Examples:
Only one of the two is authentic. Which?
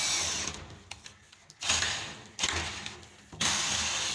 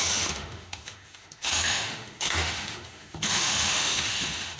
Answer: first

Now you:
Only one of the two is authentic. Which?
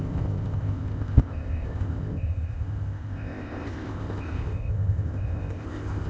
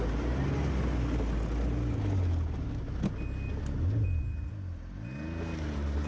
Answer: second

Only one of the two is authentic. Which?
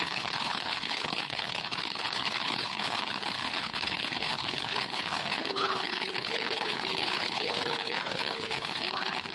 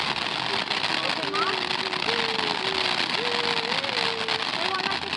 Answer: second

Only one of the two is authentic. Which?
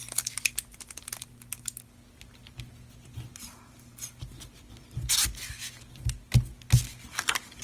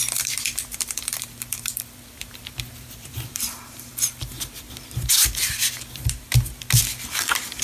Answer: first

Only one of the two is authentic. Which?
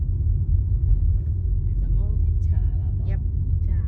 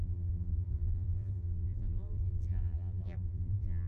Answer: first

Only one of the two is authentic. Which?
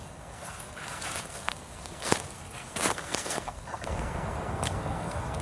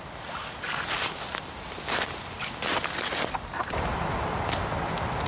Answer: second